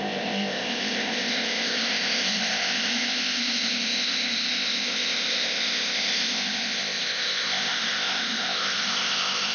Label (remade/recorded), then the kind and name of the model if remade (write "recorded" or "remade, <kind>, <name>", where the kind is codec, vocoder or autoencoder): remade, codec, ZipCodec